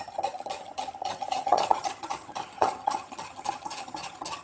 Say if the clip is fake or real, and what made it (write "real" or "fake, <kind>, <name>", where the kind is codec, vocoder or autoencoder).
fake, vocoder, HiFi-GAN